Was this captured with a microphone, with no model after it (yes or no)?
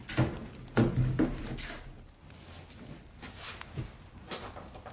yes